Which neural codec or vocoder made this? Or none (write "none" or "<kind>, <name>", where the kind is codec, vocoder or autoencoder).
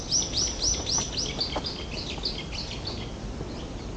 none